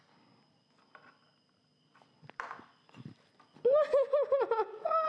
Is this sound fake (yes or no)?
no